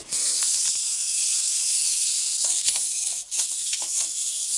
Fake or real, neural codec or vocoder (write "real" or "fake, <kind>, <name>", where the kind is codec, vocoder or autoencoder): fake, codec, SNAC